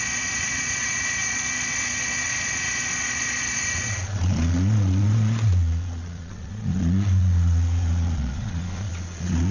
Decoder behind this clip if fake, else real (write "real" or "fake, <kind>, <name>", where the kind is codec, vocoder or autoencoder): fake, vocoder, Vocos